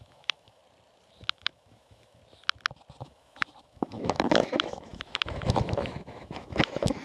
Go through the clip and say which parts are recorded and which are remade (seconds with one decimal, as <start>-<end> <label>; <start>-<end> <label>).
0.0-0.6 remade; 0.6-1.3 recorded; 1.3-2.2 remade; 2.2-3.0 recorded; 3.0-7.0 remade